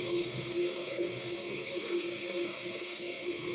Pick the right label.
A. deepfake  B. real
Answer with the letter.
A